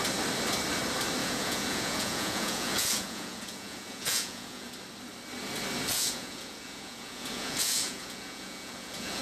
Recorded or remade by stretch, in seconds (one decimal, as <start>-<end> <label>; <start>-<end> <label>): 0.0-1.2 recorded; 1.2-4.7 remade; 4.7-5.9 recorded; 5.9-9.2 remade